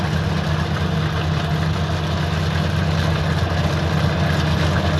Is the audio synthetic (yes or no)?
no